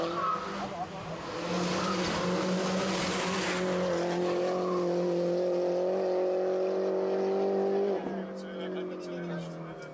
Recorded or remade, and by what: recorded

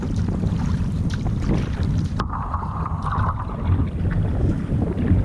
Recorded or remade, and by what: remade, vocoder, BigVGAN v2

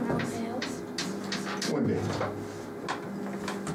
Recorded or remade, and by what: recorded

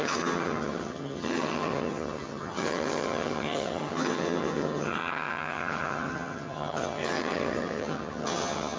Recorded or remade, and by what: remade, vocoder, HiFi-GAN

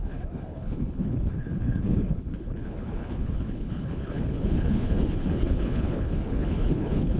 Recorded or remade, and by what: remade, codec, HILCodec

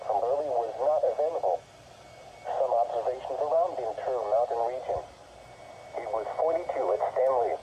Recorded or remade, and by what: recorded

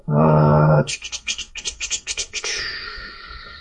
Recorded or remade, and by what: remade, codec, SNAC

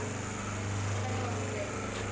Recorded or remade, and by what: recorded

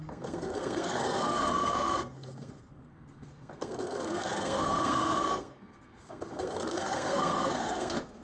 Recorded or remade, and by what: remade, codec, SNAC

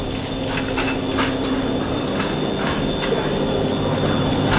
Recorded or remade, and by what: recorded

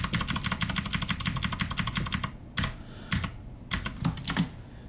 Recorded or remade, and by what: recorded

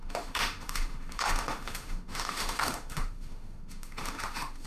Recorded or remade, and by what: remade, autoencoder, DAC-VAE